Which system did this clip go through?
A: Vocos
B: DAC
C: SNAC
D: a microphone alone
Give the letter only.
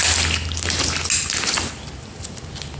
D